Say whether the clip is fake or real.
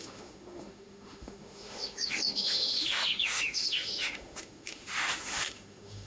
fake